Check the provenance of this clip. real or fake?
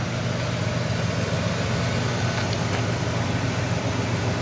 real